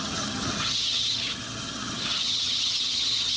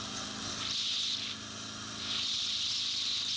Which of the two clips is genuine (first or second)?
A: second